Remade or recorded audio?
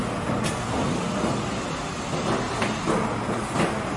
recorded